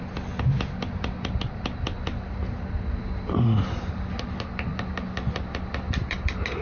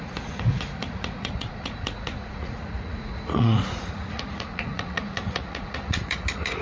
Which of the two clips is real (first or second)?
first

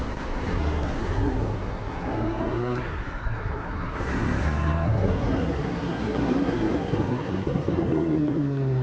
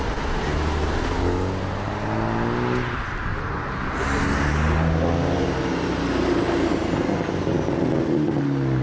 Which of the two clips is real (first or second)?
second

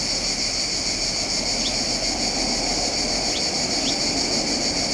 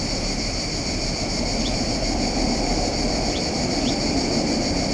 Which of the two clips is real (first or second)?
first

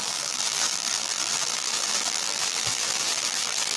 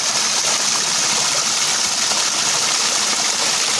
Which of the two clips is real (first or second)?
second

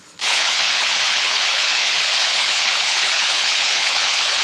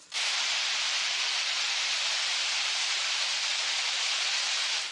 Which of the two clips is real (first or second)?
second